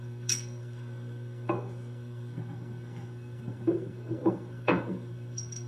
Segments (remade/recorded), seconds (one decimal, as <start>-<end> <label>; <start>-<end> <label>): 0.0-5.7 remade